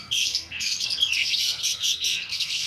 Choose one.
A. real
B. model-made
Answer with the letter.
B